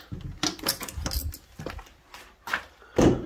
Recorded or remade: recorded